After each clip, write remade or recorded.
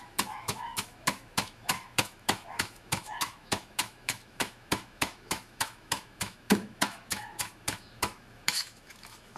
remade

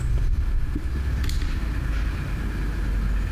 recorded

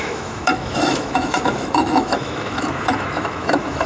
remade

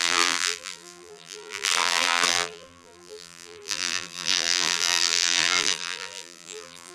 remade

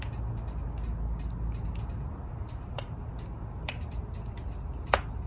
recorded